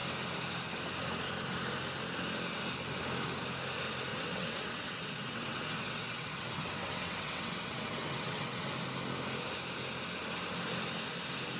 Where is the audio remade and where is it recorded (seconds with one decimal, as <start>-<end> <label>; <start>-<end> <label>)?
0.0-4.1 recorded; 4.1-8.7 remade; 8.7-11.6 recorded